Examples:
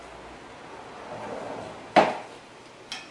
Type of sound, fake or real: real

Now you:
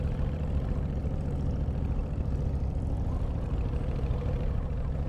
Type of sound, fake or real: fake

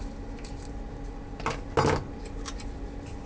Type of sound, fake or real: real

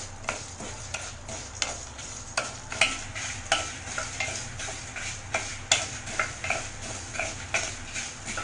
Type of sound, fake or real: real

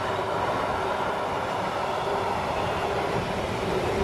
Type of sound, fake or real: real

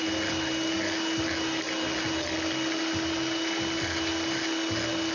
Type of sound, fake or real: real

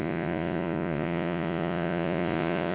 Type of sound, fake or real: fake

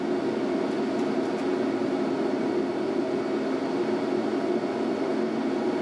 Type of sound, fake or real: real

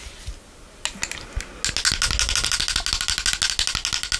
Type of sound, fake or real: real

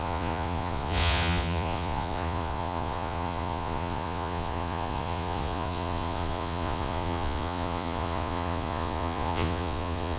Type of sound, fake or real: fake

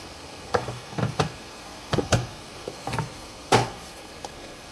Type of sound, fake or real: fake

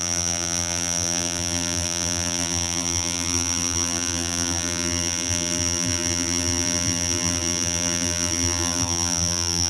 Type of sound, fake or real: fake